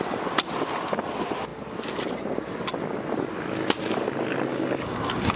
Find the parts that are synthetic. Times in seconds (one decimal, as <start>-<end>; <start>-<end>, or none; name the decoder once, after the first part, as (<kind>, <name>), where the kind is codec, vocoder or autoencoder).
4.5-5.4 (codec, DAC)